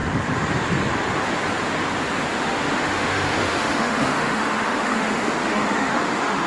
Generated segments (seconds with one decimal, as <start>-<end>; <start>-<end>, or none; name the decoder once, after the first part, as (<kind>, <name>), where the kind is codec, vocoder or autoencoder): 2.3-6.5 (autoencoder, DAC-VAE)